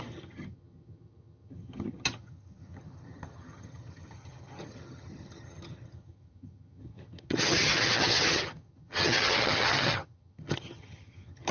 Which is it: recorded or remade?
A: remade